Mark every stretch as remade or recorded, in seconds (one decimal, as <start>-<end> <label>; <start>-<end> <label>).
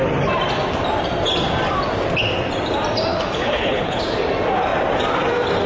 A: 0.0-3.1 recorded; 3.1-4.0 remade; 4.0-5.7 recorded